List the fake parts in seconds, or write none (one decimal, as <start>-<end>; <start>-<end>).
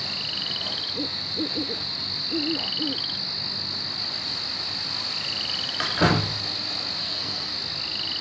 7.0-7.5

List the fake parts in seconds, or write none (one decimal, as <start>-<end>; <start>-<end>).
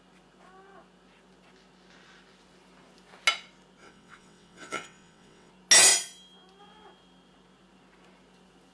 3.8-5.5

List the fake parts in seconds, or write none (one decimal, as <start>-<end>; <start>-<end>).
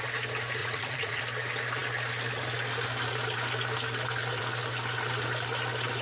0.6-1.2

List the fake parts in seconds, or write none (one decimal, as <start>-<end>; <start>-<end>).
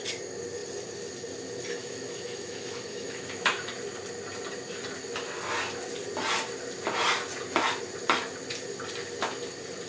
1.8-3.7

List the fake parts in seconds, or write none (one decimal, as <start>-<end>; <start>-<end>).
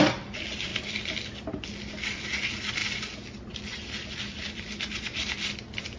none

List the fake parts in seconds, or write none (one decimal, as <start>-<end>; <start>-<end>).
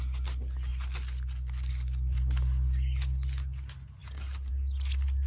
none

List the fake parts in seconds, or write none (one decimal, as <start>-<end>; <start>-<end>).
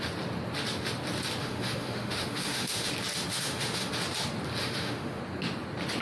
1.4-2.9; 3.3-3.9; 4.6-5.2